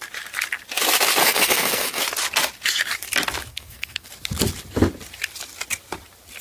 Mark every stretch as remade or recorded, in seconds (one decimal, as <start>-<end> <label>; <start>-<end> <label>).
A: 0.0-1.2 recorded; 1.2-2.0 remade; 2.0-3.5 recorded; 3.5-4.1 remade; 4.1-6.4 recorded